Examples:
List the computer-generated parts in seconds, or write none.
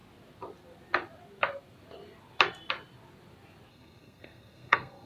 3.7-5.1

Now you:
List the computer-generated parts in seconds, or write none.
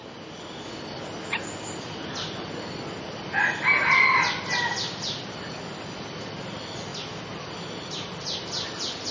none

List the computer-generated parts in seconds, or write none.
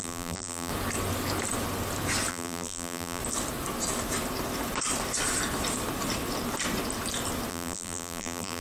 0.0-0.7; 2.3-3.2; 7.5-8.6